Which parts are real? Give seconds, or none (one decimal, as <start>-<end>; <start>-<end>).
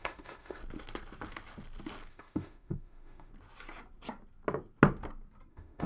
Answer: 0.6-2.1; 3.3-5.5